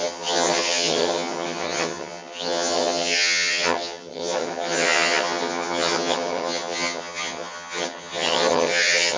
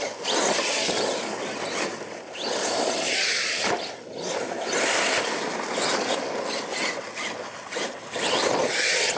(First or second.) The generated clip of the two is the first